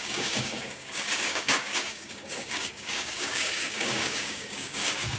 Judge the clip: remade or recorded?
remade